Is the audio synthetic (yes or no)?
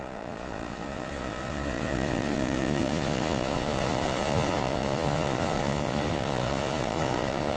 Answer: yes